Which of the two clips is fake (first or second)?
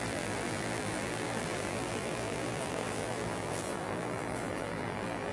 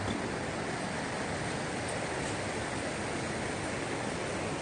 first